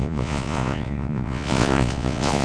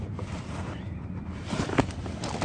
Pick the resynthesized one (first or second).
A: first